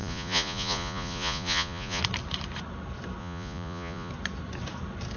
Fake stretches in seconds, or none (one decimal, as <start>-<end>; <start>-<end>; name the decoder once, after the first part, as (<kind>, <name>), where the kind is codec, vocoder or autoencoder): 0.0-2.0 (vocoder, Vocos); 3.2-4.1